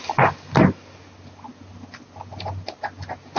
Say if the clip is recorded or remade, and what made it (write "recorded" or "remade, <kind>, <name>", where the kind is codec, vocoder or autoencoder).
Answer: recorded